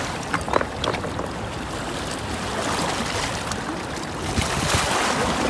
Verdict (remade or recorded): recorded